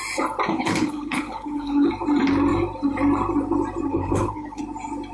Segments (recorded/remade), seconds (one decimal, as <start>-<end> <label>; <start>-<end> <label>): 0.0-0.5 recorded; 0.5-1.9 remade; 1.9-3.9 recorded; 3.9-4.6 remade; 4.6-5.1 recorded

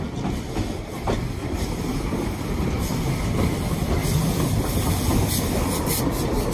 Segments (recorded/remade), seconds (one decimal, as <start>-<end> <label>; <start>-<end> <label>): 0.0-1.4 recorded; 1.4-3.0 remade; 3.0-4.0 recorded; 4.0-5.4 remade; 5.4-6.5 recorded

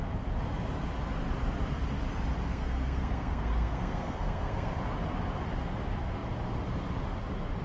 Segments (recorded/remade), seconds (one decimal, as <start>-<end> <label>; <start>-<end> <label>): 0.0-2.5 recorded; 2.5-4.7 remade; 4.7-7.6 recorded

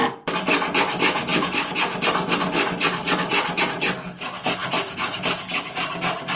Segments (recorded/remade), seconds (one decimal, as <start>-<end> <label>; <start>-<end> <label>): 0.0-6.4 recorded